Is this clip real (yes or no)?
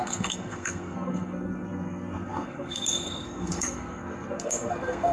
no